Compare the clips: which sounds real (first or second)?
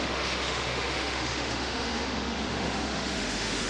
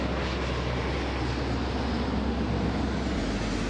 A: second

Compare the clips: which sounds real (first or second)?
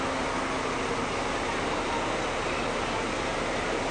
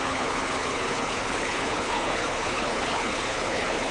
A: first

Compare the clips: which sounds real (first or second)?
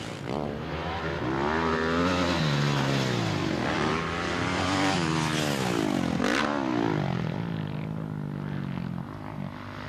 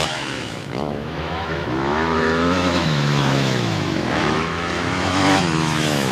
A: first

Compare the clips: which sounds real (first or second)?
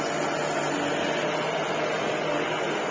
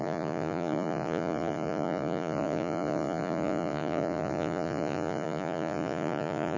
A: first